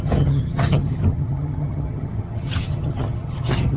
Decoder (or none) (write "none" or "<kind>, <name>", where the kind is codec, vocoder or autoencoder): vocoder, HiFi-GAN